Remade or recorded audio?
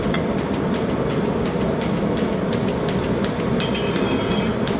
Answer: recorded